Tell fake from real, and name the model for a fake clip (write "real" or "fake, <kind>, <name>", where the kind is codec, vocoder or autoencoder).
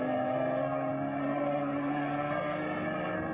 fake, codec, SNAC